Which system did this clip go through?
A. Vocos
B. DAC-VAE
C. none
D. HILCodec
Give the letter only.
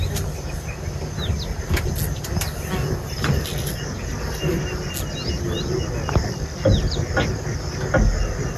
C